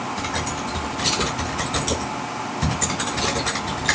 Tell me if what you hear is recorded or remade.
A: recorded